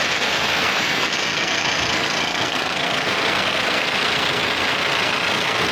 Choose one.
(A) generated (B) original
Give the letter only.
A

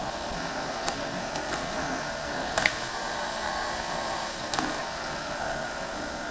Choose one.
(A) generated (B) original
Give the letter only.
A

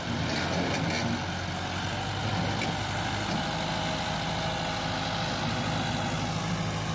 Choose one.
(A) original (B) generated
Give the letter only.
A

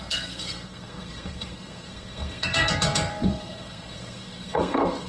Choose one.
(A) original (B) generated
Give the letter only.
B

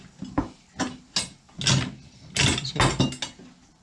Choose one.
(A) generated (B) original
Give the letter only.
B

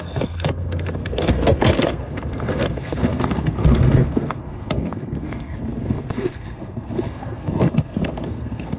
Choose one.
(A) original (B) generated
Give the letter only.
B